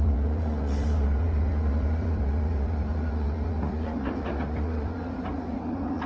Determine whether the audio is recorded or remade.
remade